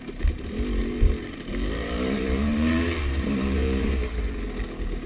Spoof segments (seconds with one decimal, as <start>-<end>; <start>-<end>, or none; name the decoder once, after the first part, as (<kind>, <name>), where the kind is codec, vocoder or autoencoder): 0.8-3.9 (vocoder, BigVGAN v2)

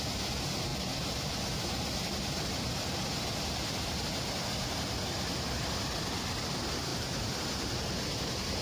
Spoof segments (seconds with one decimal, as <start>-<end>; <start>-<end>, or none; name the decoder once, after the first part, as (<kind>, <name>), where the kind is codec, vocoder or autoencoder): none

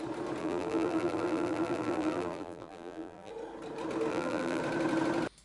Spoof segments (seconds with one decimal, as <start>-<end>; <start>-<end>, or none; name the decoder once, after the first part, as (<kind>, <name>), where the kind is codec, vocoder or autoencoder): 0.4-3.3 (vocoder, BigVGAN v2); 4.1-4.6